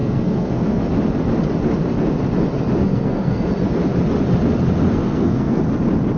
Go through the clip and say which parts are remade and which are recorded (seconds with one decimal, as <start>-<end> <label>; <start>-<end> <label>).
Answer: 0.0-0.8 remade; 0.8-2.8 recorded; 2.8-3.5 remade; 3.5-4.9 recorded; 4.9-5.6 remade; 5.6-6.2 recorded